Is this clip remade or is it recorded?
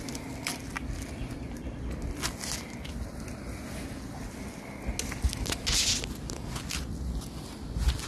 recorded